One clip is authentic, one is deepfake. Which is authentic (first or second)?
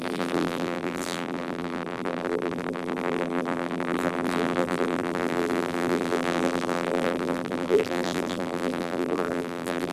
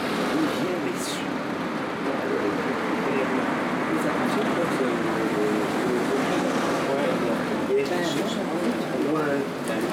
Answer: second